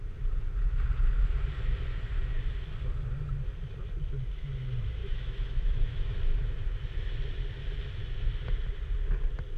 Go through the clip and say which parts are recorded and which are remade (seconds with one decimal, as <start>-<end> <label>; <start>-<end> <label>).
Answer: 0.0-5.0 recorded; 5.0-6.1 remade; 6.1-9.6 recorded